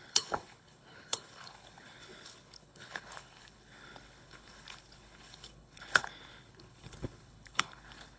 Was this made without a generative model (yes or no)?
no